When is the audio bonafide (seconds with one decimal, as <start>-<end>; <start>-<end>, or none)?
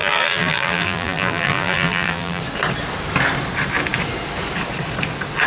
2.4-5.5